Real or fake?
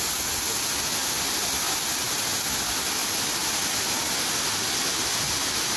real